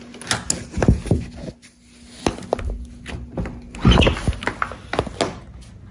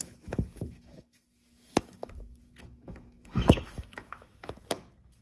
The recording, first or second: first